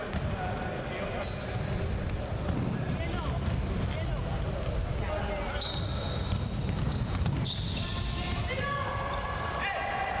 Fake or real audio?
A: real